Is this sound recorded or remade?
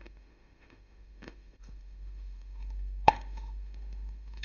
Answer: remade